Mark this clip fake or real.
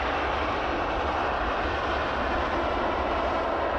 real